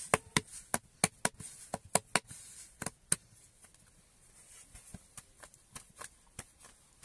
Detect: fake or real real